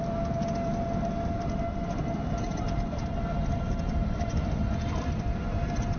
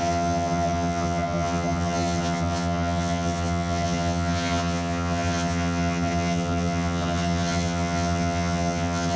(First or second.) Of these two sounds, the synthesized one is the second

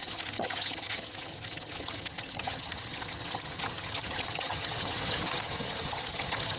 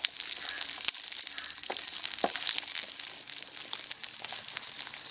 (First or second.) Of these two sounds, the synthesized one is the first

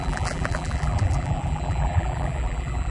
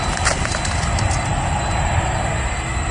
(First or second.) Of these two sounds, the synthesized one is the first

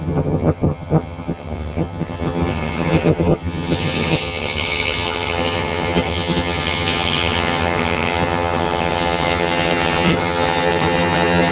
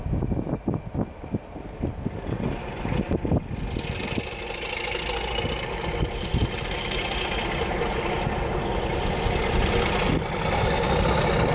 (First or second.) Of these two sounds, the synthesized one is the first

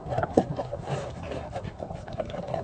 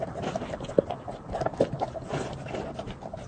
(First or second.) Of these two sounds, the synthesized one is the first